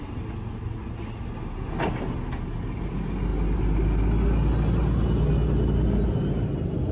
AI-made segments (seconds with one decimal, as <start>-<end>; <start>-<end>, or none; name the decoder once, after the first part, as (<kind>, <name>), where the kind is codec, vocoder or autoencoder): none